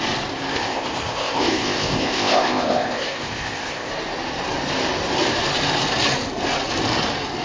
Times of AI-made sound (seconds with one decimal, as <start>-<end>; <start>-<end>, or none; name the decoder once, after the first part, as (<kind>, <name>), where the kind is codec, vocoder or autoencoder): 0.5-3.9 (codec, ZipCodec)